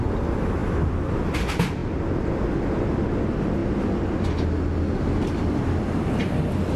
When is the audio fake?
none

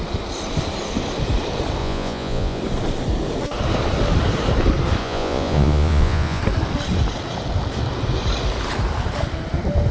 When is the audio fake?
1.8-2.6 (vocoder, Vocos); 5.0-6.4

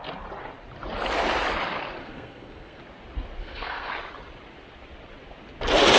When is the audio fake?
2.0-2.8 (codec, SNAC); 3.4-3.9

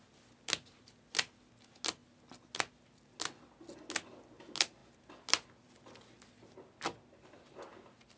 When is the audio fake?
none

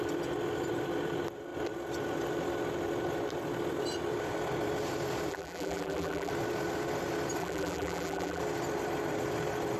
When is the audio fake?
5.3-6.3 (vocoder, BigVGAN v2); 7.4-8.4

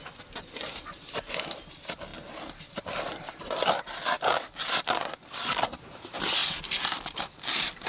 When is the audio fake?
none

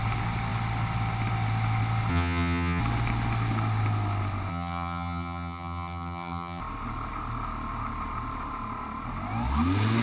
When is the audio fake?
2.1-2.8 (vocoder, HiFi-GAN); 4.5-6.6

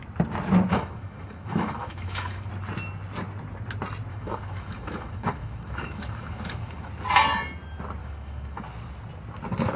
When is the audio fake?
0.7-2.5 (autoencoder, DAC-VAE); 4.1-6.9; 8.0-8.6